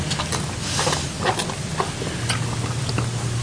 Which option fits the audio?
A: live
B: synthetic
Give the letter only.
A